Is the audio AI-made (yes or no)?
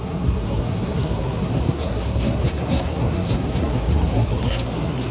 yes